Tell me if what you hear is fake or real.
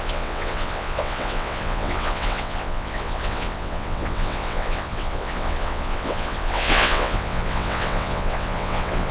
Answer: fake